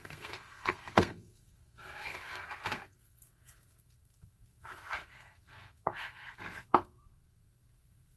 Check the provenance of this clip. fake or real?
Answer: fake